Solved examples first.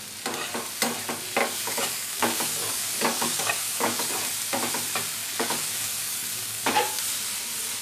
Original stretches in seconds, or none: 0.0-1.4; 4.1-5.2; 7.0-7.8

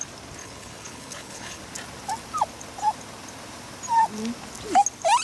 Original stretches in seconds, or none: 0.0-0.4; 1.6-5.2

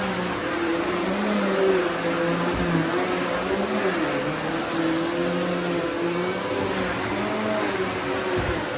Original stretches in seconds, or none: 0.0-0.4; 1.7-8.8